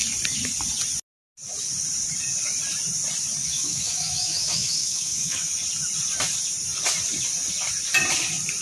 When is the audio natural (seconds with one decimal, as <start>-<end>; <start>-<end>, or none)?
0.0-3.4; 5.5-8.6